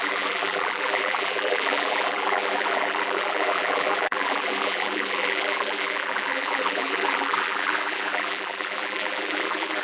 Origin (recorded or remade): remade